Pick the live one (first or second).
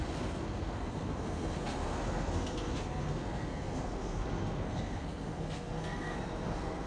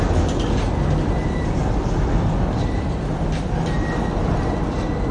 second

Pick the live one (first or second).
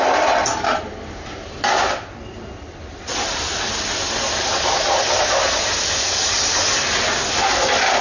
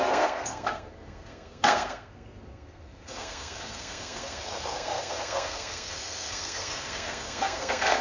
first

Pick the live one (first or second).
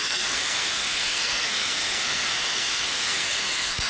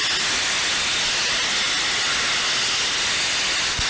second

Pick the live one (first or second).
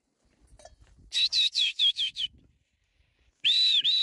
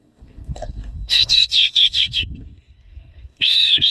first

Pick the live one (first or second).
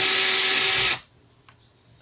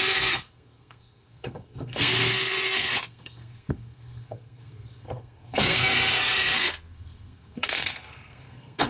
first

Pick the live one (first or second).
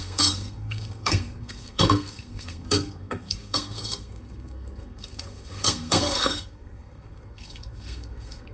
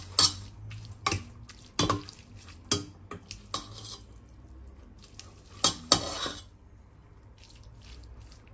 second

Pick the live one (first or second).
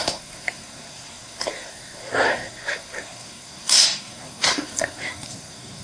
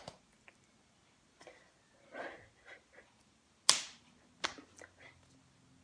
second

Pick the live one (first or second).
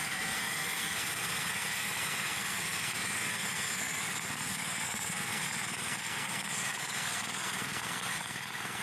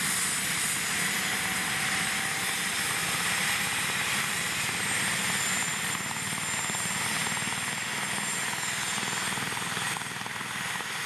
second